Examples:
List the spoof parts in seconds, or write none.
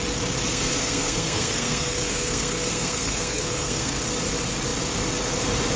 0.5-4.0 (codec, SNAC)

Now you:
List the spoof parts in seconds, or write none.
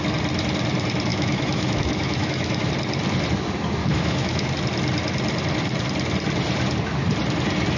1.1-2.7 (autoencoder, DAC-VAE); 3.8-4.5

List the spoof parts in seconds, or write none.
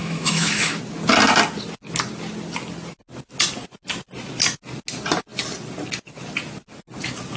0.0-0.8 (autoencoder, DAC-VAE)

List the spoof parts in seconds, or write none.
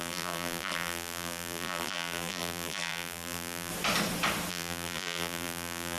0.0-3.7 (vocoder, BigVGAN v2); 4.5-6.0